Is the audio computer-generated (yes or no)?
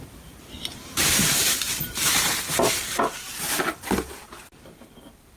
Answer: yes